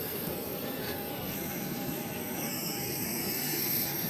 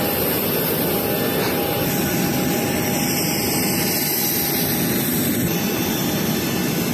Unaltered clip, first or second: second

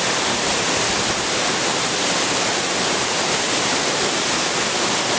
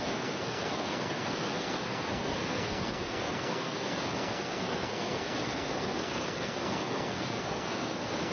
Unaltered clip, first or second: first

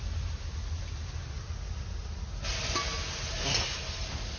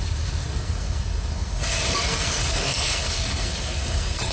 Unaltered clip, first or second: first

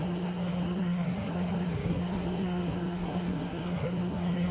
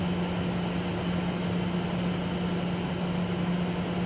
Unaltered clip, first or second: second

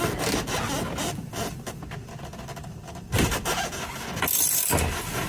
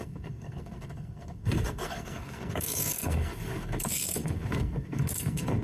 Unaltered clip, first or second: first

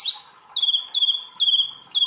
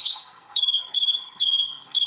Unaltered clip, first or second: first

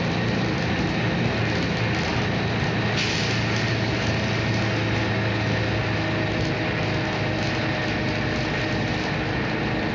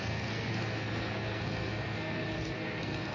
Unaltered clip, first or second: first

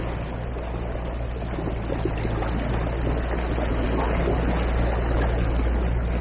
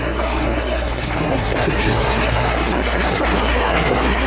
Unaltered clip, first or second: first